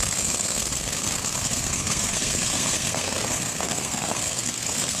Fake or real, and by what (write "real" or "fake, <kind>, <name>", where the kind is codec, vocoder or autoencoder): fake, codec, SNAC